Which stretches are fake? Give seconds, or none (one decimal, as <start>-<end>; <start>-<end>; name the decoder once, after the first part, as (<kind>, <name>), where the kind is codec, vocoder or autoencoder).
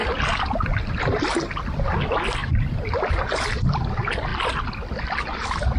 2.4-3.1 (vocoder, BigVGAN v2)